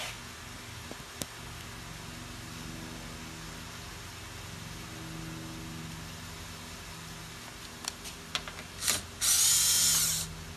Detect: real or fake real